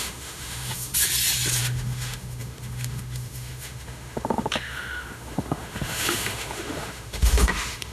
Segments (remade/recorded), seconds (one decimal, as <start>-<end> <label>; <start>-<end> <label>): 0.0-0.9 remade; 0.9-1.6 recorded; 1.6-7.9 remade